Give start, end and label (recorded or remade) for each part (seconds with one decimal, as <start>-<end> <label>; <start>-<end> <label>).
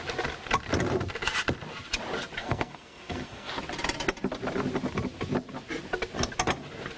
0.0-2.4 recorded; 2.4-3.5 remade; 3.5-7.0 recorded